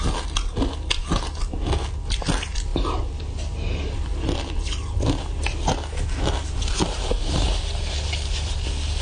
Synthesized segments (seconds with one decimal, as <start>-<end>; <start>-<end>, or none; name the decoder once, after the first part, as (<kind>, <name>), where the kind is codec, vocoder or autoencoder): none